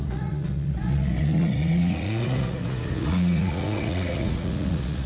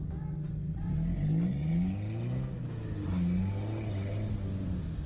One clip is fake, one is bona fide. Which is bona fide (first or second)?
second